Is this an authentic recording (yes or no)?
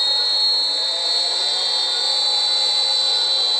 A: yes